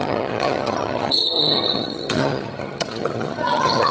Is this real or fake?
fake